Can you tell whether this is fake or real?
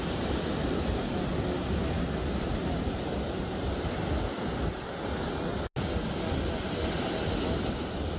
real